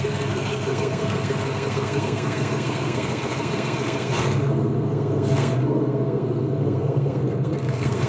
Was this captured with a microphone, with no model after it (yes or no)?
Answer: no